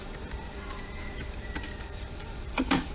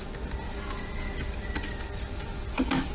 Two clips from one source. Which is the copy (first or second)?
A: first